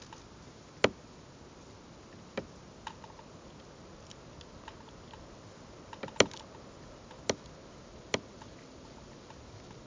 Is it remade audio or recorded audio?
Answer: recorded